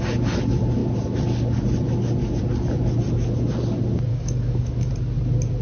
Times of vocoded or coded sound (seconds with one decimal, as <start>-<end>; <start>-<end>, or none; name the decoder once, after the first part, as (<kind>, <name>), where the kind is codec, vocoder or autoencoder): 4.1-4.9 (codec, DAC)